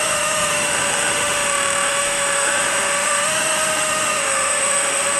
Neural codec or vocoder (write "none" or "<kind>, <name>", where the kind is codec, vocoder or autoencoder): autoencoder, DAC-VAE